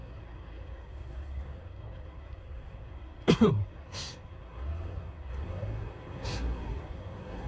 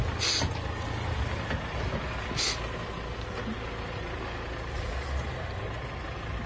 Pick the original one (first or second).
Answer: second